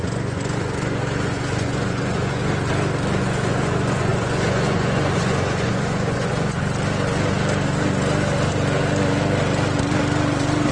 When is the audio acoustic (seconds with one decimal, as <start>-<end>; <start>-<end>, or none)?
2.4-3.2; 6.6-10.7